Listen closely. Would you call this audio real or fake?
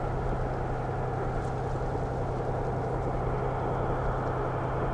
real